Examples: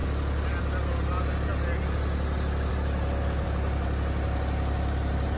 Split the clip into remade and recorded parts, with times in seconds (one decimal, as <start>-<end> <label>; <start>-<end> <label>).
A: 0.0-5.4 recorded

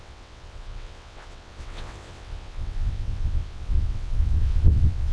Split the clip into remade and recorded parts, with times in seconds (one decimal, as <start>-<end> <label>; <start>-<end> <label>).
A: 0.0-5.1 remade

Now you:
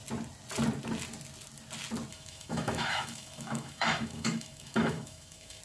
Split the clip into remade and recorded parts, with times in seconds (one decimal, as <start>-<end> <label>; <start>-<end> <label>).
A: 0.0-2.1 recorded; 2.1-5.6 remade

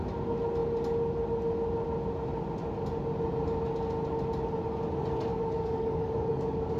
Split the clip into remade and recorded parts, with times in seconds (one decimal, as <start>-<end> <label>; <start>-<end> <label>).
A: 0.0-5.3 recorded; 5.3-6.8 remade

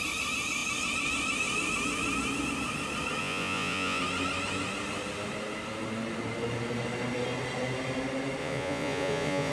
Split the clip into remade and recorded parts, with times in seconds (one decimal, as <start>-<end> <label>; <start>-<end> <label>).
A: 0.0-3.2 recorded; 3.2-4.0 remade; 4.0-8.4 recorded; 8.4-9.5 remade